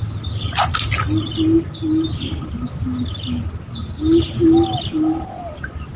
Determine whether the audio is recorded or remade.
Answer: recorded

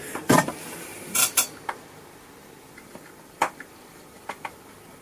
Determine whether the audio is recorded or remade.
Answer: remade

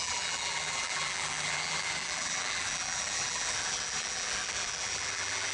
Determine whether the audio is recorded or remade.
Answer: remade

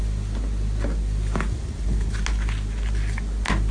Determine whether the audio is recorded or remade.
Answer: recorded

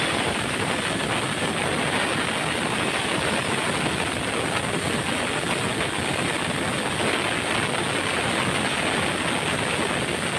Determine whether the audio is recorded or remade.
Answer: recorded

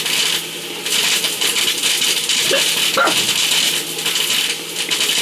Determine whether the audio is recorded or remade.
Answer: remade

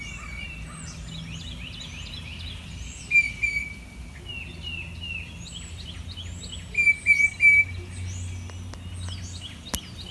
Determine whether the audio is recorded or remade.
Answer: recorded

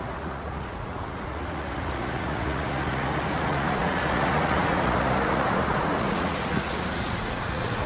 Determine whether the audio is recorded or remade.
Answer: remade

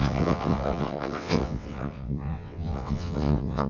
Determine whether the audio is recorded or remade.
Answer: remade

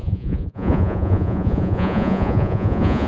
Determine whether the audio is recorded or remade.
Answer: remade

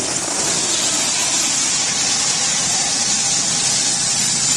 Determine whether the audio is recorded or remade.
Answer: recorded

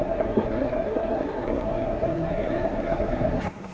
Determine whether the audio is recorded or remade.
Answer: remade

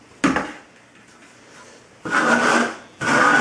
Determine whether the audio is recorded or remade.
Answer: recorded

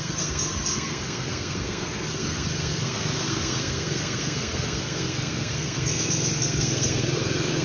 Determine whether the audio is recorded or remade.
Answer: remade